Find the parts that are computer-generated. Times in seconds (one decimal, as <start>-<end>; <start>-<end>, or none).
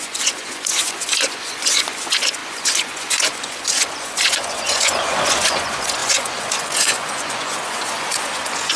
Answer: 0.0-8.8